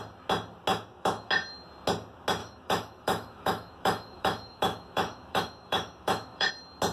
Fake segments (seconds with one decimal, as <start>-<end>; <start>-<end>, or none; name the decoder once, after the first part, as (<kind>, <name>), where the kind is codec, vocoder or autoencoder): 0.7-1.3 (autoencoder, DAC-VAE); 2.4-6.5